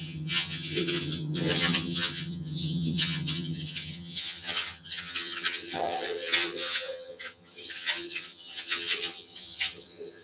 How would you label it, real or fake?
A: fake